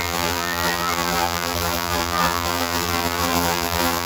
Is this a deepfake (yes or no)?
yes